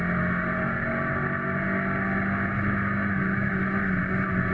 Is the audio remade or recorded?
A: recorded